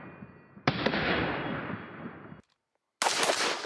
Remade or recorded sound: recorded